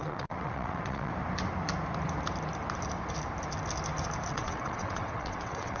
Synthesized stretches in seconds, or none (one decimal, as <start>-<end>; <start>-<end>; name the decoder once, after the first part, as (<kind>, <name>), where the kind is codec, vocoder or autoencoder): 0.0-1.1 (vocoder, WaveNeXt); 4.3-5.8

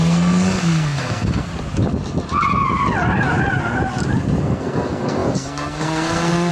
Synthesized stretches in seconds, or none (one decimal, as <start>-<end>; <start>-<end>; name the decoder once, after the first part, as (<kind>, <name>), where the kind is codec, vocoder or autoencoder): 0.0-1.5 (codec, SNAC); 4.4-6.5